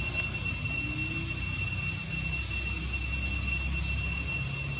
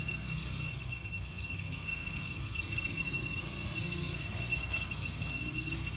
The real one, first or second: first